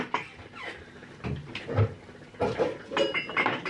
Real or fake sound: real